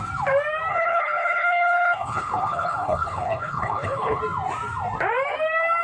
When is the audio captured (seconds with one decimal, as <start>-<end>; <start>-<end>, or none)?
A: 0.0-0.7; 4.2-5.8